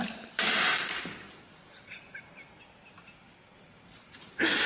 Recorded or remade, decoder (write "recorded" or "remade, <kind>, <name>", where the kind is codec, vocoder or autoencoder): recorded